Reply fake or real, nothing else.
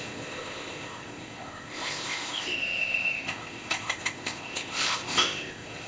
fake